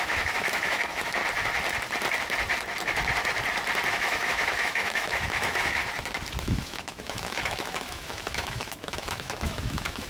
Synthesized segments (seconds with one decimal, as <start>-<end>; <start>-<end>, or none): 0.0-1.2; 3.9-5.8; 6.4-10.1